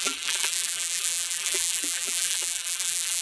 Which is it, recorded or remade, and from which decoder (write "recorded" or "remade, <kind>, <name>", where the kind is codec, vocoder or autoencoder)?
remade, vocoder, BigVGAN v2